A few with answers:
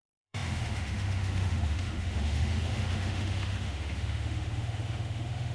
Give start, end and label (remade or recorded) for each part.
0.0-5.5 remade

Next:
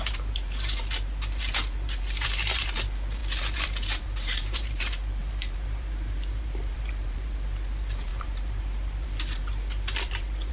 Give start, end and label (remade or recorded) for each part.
0.0-10.5 remade

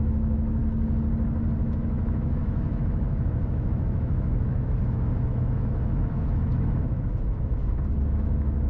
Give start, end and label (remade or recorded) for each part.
0.0-0.6 remade; 0.6-1.6 recorded; 1.6-8.7 remade

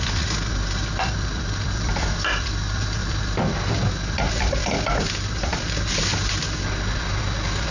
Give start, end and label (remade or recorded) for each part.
0.0-3.0 recorded; 3.0-3.9 remade; 3.9-4.6 recorded; 4.6-5.3 remade; 5.3-7.7 recorded

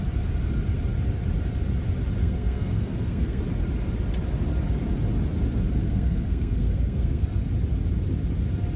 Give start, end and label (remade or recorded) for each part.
0.0-2.2 recorded; 2.2-3.4 remade; 3.4-5.8 recorded; 5.8-7.5 remade; 7.5-8.8 recorded

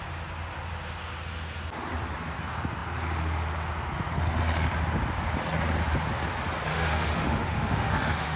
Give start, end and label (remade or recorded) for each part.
0.0-6.7 recorded; 6.7-8.4 remade